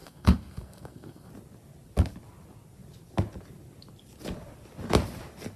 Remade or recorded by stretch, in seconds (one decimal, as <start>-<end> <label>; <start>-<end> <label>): 0.0-1.3 remade; 1.3-5.6 recorded